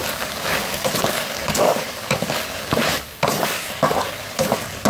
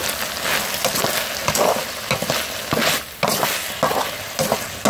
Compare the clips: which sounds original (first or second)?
second